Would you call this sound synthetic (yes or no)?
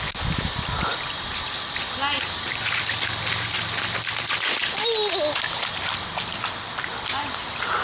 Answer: no